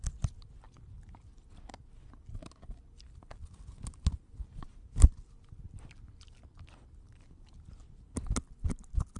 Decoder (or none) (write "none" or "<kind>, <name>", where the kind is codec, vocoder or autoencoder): none